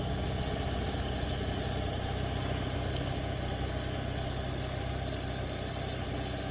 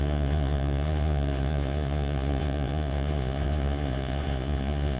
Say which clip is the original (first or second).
first